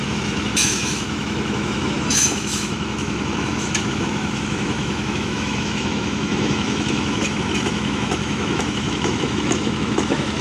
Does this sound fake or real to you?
fake